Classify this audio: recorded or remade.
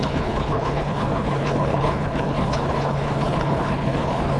remade